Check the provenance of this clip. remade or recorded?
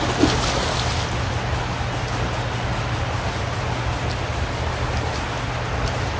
recorded